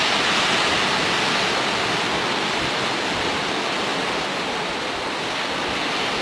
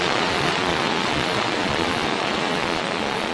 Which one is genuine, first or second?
first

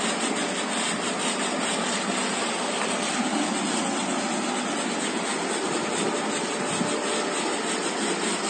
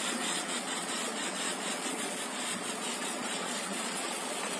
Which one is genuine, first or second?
first